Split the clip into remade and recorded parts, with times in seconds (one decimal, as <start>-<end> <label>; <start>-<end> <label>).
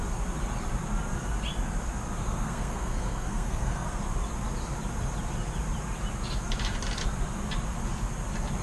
0.0-2.2 recorded; 2.2-4.0 remade; 4.0-8.6 recorded